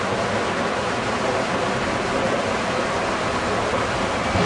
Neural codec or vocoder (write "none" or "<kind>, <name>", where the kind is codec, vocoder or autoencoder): none